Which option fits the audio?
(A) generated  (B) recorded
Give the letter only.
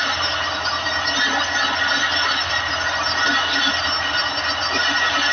B